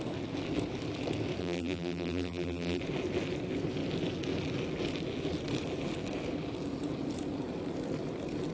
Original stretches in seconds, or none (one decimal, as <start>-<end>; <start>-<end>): 0.0-1.4; 2.8-8.5